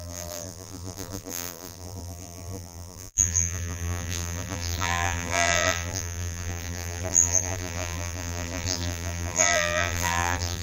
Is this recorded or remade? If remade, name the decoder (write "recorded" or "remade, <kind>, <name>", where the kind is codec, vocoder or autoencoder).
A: remade, vocoder, BigVGAN v2